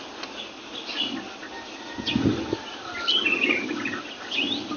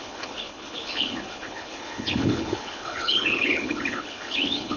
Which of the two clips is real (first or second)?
first